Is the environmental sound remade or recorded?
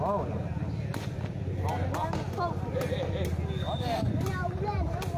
recorded